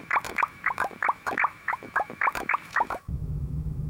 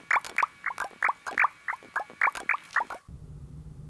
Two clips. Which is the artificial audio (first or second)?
first